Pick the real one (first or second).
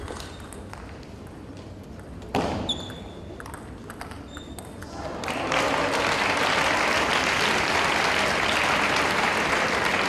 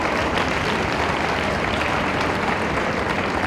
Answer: first